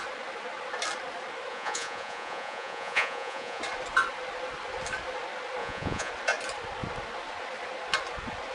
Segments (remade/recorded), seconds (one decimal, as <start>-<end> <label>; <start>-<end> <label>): 0.0-1.5 recorded; 1.5-3.6 remade; 3.6-5.6 recorded; 5.6-6.1 remade; 6.1-8.5 recorded